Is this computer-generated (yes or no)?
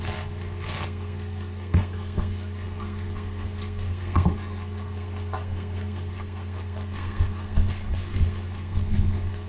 yes